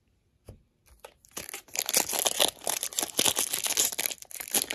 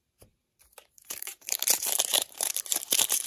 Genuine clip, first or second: first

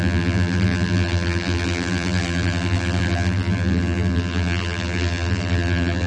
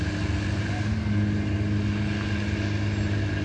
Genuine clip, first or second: second